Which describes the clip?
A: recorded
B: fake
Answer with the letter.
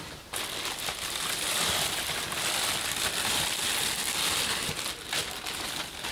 A